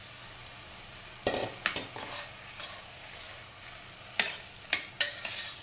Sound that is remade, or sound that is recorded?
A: recorded